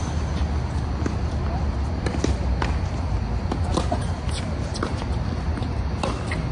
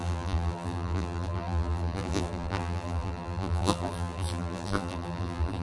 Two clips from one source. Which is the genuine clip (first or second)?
first